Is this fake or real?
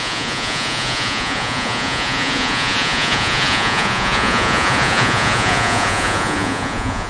fake